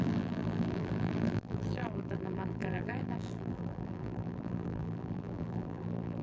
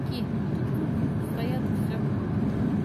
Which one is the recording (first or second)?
second